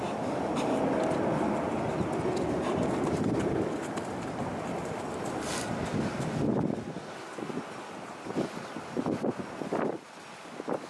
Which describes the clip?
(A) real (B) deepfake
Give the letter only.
A